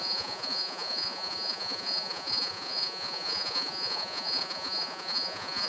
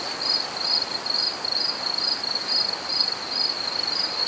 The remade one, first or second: first